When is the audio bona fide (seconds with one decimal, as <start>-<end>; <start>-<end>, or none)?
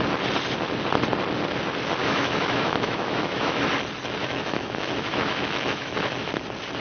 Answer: 0.0-2.0; 3.6-4.2; 6.3-6.8